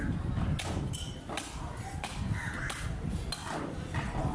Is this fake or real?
real